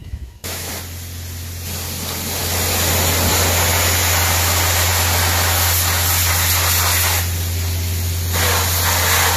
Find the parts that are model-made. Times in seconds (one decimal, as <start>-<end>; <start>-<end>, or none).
0.0-0.7